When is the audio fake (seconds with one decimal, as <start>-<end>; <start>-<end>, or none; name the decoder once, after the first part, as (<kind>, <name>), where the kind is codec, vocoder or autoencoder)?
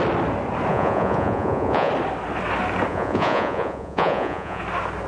0.7-1.9 (vocoder, Vocos); 2.9-4.6